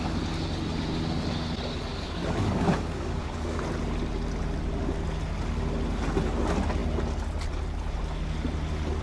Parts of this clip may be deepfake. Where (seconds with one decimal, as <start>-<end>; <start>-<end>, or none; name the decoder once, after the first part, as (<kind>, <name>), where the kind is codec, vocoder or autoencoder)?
1.9-3.6 (codec, DAC)